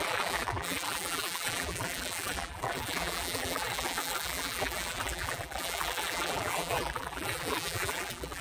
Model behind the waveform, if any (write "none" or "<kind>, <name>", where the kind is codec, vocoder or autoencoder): vocoder, BigVGAN v2